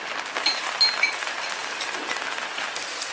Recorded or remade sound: recorded